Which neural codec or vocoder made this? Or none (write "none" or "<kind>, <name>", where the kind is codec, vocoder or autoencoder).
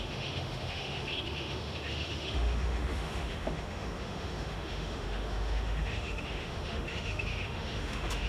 autoencoder, DAC-VAE